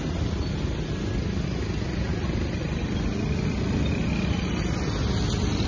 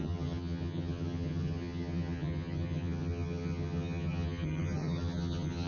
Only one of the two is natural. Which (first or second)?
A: first